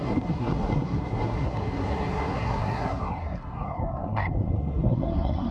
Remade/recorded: remade